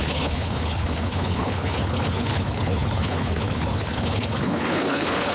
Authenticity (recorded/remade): remade